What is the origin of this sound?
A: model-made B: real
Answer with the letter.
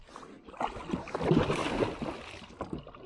B